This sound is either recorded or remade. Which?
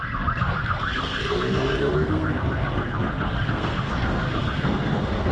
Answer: remade